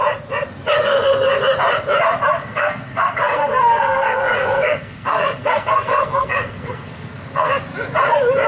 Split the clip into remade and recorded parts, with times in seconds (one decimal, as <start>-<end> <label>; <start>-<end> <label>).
0.0-0.8 recorded; 0.8-1.3 remade; 1.3-2.4 recorded; 2.4-7.5 remade; 7.5-8.5 recorded